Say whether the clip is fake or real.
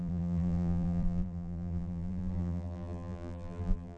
fake